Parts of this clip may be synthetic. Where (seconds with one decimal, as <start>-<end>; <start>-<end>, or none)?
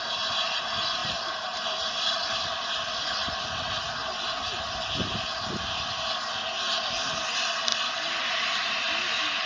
none